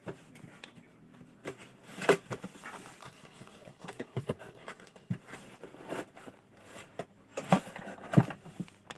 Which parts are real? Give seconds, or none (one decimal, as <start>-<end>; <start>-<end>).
0.0-3.0; 5.1-9.0